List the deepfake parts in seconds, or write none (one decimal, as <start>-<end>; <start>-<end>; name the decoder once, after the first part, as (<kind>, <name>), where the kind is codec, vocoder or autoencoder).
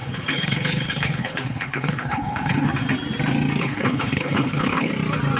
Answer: 0.0-2.7 (codec, HILCodec); 3.6-4.9